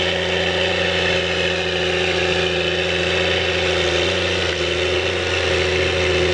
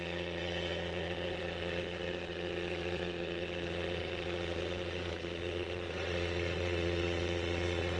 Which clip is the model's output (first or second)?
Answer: second